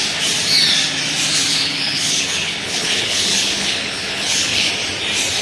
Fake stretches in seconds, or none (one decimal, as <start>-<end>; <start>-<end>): 1.5-4.7